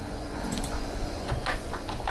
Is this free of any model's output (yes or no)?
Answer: no